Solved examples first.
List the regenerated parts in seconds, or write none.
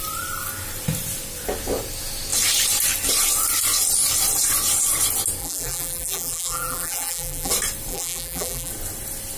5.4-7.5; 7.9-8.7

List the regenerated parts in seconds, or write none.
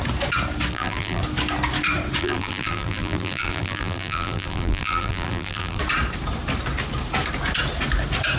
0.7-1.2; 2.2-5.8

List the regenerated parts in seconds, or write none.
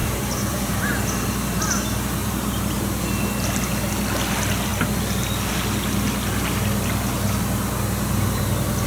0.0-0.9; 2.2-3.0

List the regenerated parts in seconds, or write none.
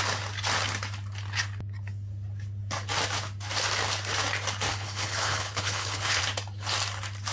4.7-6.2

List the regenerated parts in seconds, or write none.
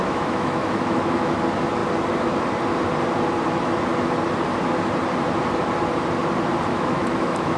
0.0-1.3; 6.7-7.6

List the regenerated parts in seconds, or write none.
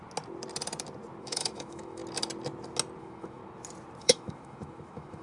1.2-2.0; 3.0-3.4; 4.0-5.2